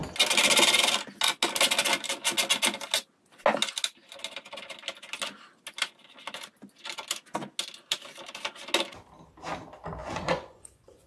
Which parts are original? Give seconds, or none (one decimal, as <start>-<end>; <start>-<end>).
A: 0.0-10.0